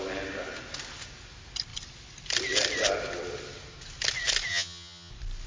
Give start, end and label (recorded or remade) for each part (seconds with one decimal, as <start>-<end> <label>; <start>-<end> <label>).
0.0-4.5 recorded; 4.5-5.1 remade; 5.1-5.5 recorded

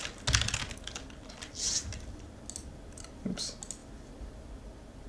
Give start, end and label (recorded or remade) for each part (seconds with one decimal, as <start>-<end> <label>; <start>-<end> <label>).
0.0-5.1 recorded